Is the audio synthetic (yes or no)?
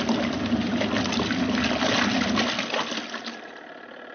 no